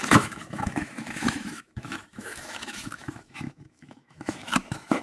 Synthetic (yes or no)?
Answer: yes